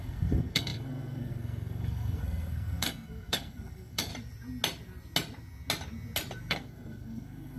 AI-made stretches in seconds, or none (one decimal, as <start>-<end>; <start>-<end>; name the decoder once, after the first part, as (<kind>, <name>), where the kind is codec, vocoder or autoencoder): 0.0-4.1 (codec, SNAC); 6.5-7.6